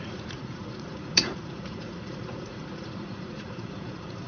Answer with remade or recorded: remade